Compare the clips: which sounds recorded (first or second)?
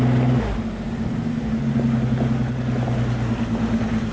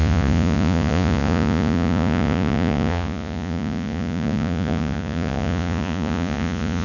first